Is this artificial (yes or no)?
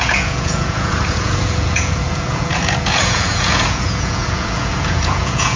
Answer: yes